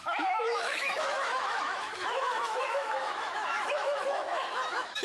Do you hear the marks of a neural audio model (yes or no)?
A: yes